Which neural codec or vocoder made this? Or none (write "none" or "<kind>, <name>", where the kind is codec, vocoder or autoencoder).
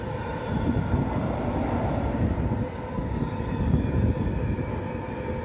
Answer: none